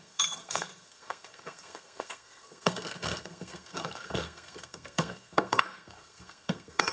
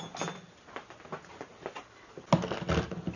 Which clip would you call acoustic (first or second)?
second